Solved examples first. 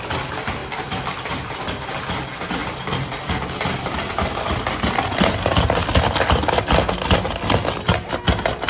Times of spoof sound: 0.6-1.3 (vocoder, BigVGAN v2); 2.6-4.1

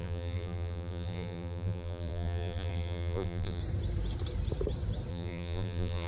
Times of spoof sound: 0.0-3.6 (vocoder, BigVGAN v2); 5.1-6.1

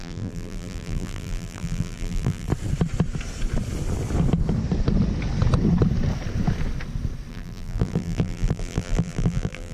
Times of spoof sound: 0.0-2.5 (vocoder, BigVGAN v2); 7.3-9.7